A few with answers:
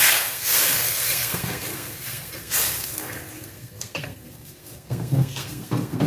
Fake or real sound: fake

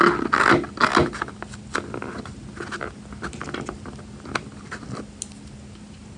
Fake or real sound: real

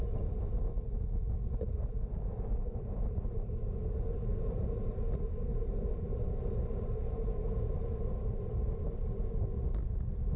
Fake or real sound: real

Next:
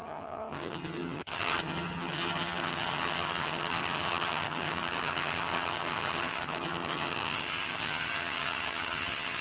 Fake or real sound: fake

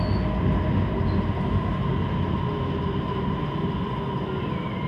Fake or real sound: real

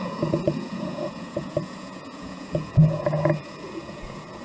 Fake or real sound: fake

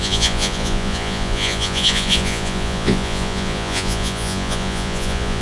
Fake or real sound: fake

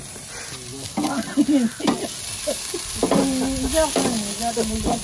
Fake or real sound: real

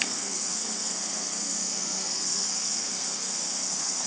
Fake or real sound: fake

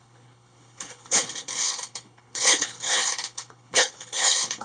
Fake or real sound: fake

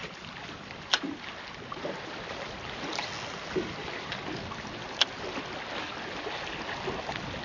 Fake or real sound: real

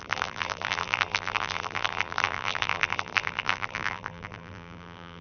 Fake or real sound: fake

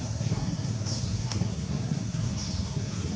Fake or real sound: fake